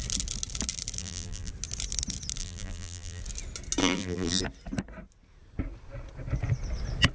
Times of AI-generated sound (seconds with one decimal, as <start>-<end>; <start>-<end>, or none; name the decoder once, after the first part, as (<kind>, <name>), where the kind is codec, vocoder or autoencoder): 1.0-1.5 (vocoder, BigVGAN v2); 2.4-3.2; 3.8-4.4